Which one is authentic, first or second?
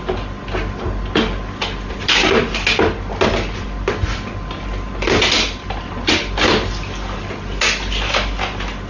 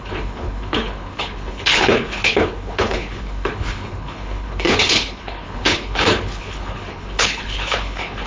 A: first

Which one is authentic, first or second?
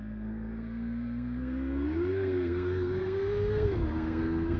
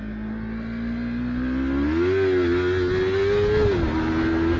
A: second